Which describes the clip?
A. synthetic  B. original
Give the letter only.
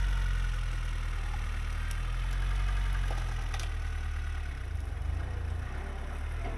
B